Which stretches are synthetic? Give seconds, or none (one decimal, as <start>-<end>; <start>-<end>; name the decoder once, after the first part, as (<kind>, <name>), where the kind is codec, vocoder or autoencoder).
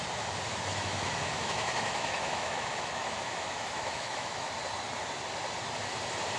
0.7-4.5 (autoencoder, DAC-VAE)